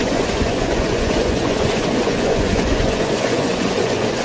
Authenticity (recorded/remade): remade